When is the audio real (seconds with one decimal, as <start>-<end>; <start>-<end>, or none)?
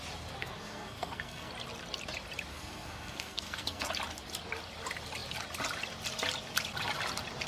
0.0-0.4; 1.5-2.5; 3.9-7.5